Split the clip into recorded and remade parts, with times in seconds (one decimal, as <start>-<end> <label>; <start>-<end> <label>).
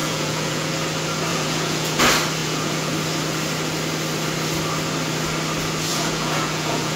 0.0-0.7 remade; 0.7-1.3 recorded; 1.3-2.0 remade; 2.0-2.4 recorded; 2.4-2.9 remade; 2.9-5.9 recorded; 5.9-7.0 remade